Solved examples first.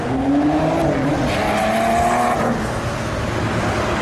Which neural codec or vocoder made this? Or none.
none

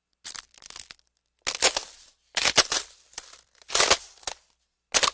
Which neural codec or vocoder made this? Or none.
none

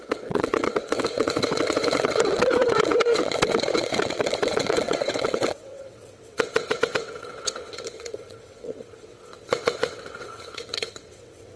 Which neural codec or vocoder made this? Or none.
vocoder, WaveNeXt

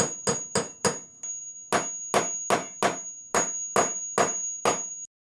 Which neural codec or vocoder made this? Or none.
none